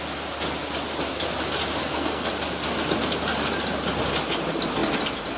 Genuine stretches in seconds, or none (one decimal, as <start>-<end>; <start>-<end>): 0.0-1.8; 2.3-5.4